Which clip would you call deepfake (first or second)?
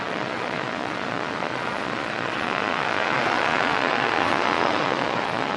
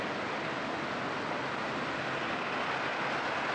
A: first